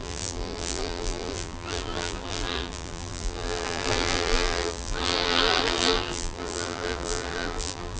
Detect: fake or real fake